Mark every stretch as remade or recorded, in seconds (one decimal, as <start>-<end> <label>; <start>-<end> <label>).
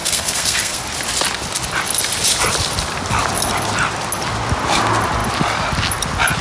0.0-0.8 remade; 0.8-6.4 recorded